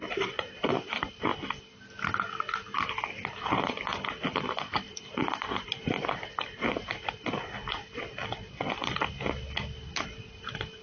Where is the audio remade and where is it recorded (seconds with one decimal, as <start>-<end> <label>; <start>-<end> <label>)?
0.0-1.3 remade; 1.3-2.8 recorded; 2.8-3.9 remade; 3.9-4.9 recorded; 4.9-8.2 remade; 8.2-10.1 recorded; 10.1-10.8 remade